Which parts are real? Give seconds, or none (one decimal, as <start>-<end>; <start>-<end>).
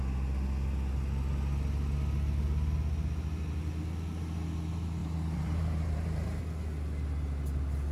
0.0-5.0; 6.4-7.9